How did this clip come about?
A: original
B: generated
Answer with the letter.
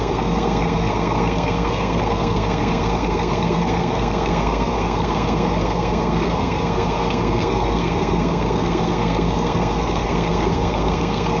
B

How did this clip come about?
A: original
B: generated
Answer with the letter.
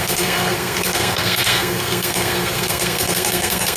B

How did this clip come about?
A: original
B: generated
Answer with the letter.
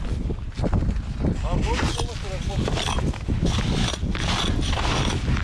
A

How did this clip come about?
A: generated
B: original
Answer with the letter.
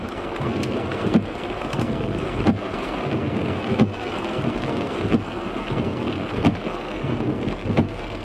A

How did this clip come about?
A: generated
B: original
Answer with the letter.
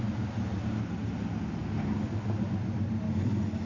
B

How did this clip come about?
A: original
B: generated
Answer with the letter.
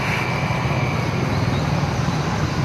A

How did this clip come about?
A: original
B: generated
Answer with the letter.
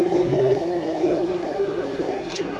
B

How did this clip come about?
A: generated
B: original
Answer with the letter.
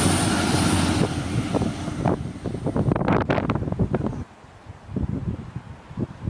B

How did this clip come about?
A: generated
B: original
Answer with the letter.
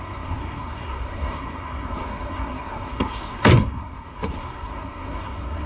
A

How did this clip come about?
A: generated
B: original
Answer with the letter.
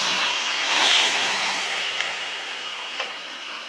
A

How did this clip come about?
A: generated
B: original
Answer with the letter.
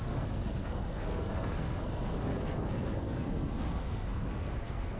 A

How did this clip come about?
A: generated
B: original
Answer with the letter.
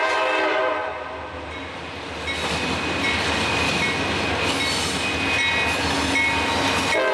B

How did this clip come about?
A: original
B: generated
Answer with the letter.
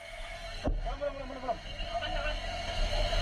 A